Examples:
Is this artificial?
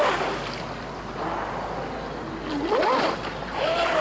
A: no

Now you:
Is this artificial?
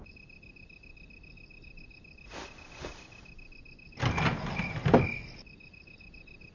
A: no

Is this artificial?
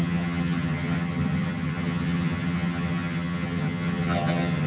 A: yes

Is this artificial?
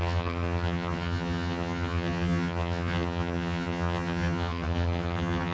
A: yes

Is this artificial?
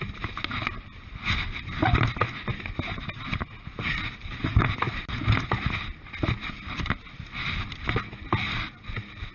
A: no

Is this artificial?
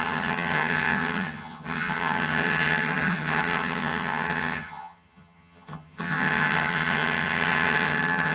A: yes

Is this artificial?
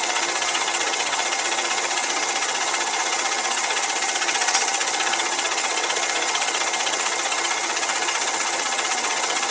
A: yes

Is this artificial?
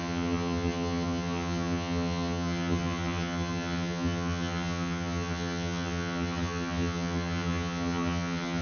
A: yes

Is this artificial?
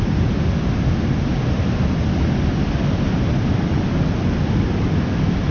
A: no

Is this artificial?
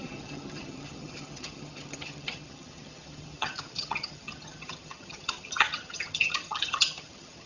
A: yes